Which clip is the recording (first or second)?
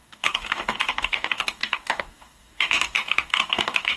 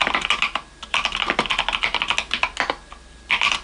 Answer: second